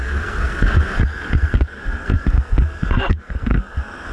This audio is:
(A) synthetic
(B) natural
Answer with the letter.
A